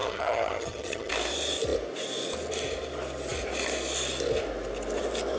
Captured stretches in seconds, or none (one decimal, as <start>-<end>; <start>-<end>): 1.1-5.4